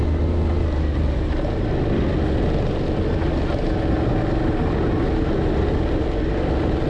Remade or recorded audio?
recorded